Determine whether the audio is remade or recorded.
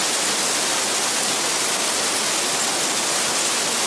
recorded